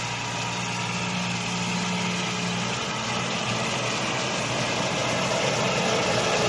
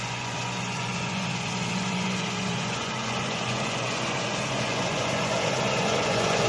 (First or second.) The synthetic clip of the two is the second